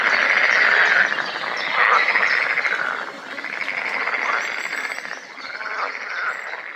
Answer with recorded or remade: recorded